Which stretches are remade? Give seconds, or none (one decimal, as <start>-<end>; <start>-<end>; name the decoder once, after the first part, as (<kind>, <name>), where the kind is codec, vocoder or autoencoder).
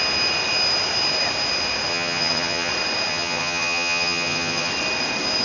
1.9-2.7 (vocoder, HiFi-GAN); 3.1-4.7